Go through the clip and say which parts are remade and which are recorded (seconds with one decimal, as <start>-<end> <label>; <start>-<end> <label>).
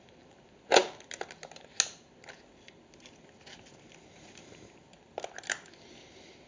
0.0-6.5 recorded